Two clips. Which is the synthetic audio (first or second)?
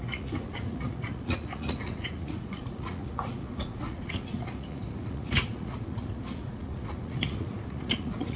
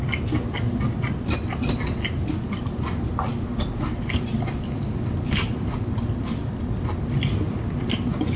first